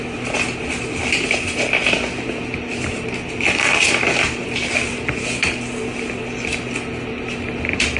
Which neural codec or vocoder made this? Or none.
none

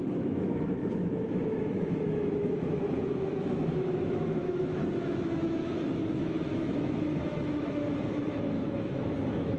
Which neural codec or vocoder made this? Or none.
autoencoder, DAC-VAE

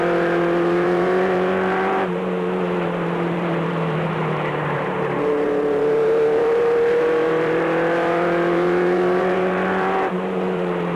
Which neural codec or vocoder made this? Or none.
vocoder, BigVGAN v2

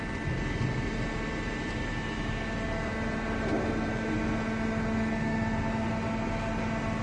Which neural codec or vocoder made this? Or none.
none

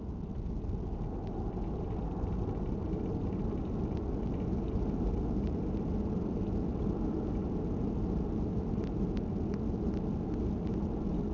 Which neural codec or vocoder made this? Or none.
none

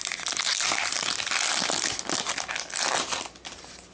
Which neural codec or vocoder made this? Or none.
none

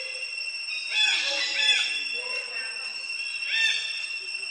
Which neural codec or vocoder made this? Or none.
none